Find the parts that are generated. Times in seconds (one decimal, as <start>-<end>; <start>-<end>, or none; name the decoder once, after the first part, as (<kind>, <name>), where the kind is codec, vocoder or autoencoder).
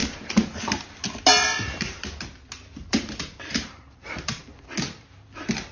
0.0-0.6 (vocoder, BigVGAN v2); 2.8-4.4